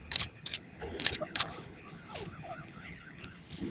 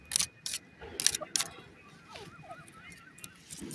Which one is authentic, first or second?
second